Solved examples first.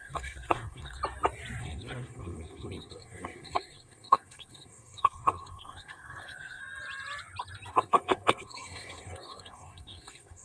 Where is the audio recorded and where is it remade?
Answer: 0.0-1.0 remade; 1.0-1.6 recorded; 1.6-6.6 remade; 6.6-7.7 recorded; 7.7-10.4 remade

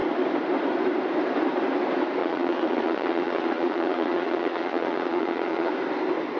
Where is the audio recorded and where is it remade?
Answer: 0.0-2.2 recorded; 2.2-5.7 remade; 5.7-6.4 recorded

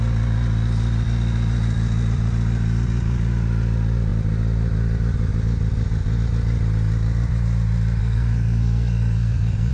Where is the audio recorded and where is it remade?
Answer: 0.0-8.0 recorded; 8.0-9.7 remade

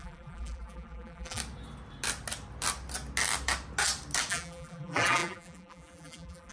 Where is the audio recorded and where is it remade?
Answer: 0.0-1.4 remade; 1.4-4.3 recorded; 4.3-6.5 remade

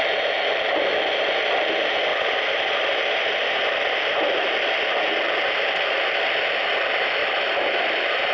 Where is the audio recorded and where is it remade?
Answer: 0.0-2.1 recorded; 2.1-4.8 remade; 4.8-7.2 recorded; 7.2-8.3 remade